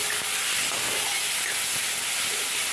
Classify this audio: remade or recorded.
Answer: recorded